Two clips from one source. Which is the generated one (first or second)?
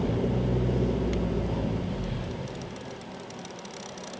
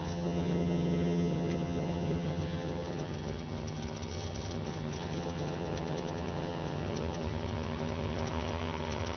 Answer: second